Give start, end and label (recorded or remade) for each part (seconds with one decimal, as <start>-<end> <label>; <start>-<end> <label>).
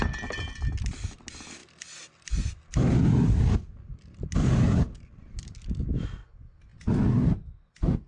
0.0-8.1 recorded